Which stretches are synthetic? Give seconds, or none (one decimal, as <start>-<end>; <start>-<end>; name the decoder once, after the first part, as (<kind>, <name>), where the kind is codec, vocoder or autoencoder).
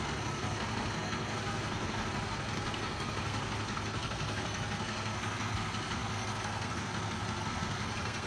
0.0-8.3 (codec, SNAC)